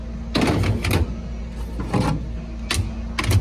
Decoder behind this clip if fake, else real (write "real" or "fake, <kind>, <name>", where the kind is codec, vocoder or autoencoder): real